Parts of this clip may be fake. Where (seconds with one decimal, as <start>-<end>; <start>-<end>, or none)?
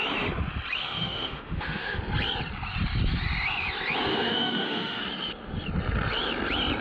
0.8-2.0; 4.1-5.0